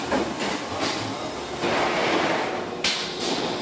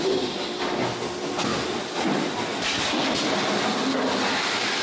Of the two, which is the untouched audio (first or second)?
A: first